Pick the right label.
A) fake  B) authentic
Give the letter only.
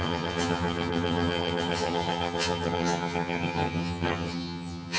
A